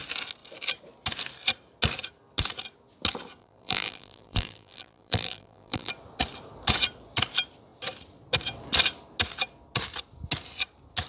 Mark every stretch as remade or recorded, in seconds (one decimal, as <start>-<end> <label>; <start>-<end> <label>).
0.0-3.4 recorded; 3.4-5.9 remade; 5.9-11.1 recorded